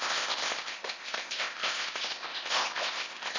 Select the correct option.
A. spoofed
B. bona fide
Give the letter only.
A